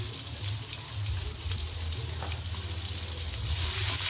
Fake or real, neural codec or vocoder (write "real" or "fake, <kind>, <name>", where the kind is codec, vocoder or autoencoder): real